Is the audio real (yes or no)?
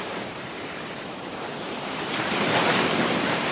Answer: no